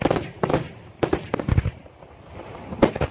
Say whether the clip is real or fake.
real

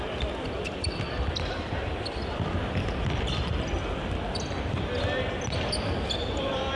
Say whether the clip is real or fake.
real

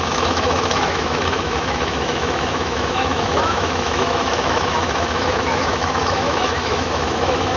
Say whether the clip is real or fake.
fake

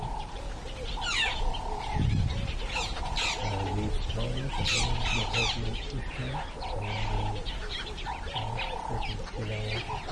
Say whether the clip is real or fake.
real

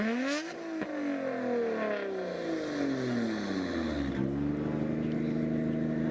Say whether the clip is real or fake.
real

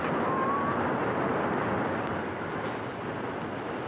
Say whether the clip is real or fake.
real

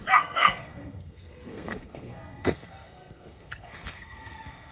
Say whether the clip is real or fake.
fake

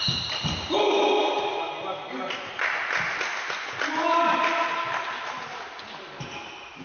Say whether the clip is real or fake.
real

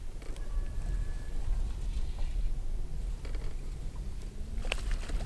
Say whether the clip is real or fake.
real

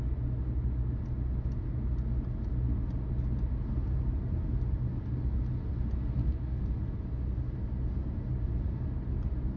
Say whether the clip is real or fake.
real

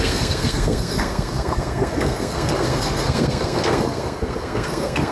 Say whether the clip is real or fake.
fake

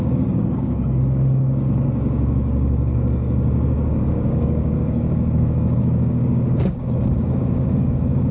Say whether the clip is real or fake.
fake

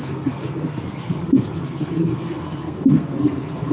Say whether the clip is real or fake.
fake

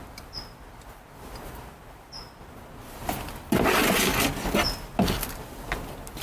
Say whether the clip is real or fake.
real